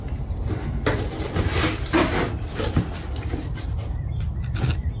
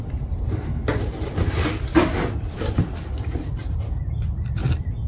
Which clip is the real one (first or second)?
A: first